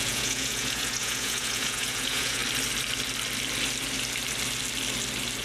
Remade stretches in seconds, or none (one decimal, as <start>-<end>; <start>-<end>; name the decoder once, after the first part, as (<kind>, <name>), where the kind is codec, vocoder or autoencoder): 0.0-2.4 (vocoder, Vocos)